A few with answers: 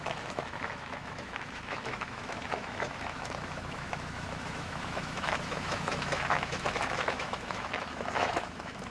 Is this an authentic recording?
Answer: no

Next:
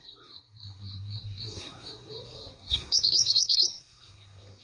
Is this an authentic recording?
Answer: no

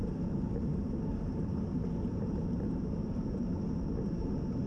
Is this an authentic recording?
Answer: no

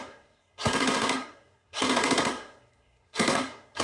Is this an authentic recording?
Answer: no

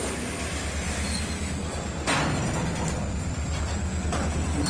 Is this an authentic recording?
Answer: yes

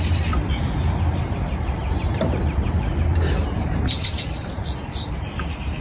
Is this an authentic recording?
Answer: no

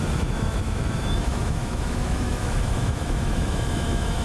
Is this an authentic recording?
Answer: no